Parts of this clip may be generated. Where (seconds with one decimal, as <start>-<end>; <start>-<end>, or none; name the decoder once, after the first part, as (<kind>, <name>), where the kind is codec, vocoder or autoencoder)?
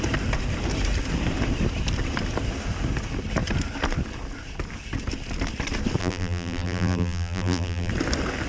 6.0-7.9 (vocoder, BigVGAN v2)